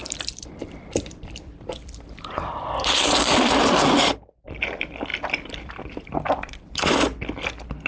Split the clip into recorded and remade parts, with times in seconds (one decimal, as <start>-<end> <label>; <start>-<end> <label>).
0.0-3.6 remade; 3.6-5.1 recorded; 5.1-6.6 remade; 6.6-7.9 recorded